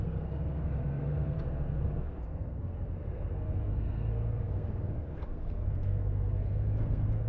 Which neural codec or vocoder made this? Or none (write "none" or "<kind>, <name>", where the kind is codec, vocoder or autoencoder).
codec, SNAC